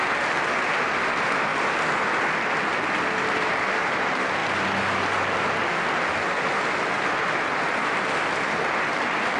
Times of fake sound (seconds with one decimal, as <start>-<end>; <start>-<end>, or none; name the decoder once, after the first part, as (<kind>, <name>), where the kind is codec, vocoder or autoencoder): none

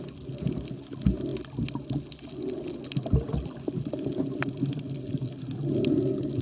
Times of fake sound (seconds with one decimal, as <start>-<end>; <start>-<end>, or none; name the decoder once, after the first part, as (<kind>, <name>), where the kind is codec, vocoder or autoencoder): none